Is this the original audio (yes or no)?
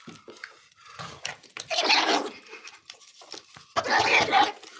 yes